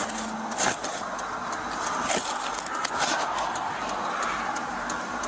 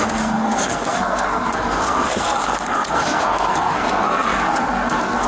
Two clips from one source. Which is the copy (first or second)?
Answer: second